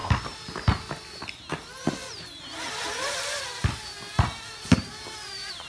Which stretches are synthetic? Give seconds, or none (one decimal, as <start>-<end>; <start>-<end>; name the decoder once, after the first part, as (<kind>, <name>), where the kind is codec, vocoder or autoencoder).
none